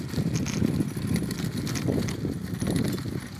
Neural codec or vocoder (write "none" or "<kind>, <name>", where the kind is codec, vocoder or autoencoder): none